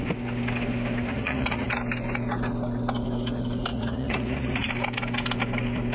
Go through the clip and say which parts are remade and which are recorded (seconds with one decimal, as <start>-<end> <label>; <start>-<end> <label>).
0.0-1.1 recorded; 1.1-1.7 remade; 1.7-3.7 recorded; 3.7-4.7 remade; 4.7-5.9 recorded